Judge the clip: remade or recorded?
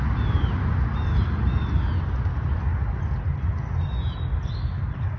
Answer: recorded